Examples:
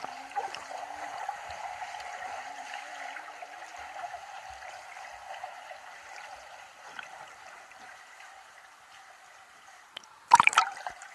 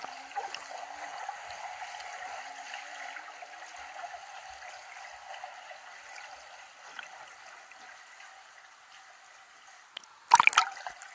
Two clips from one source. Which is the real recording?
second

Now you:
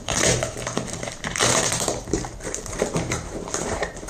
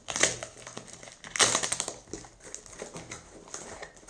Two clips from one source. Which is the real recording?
second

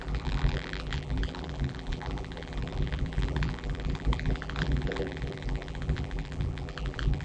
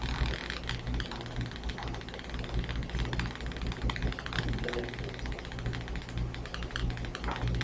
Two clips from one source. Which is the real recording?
second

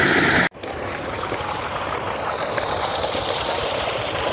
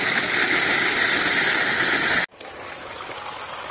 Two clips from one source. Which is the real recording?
second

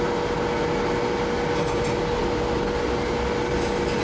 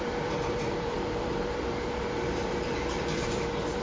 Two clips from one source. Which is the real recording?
first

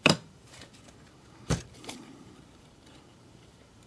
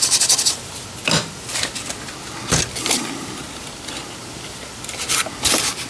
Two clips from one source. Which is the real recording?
second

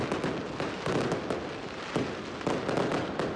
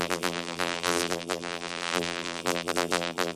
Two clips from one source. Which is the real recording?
first